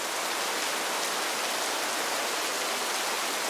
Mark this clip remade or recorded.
recorded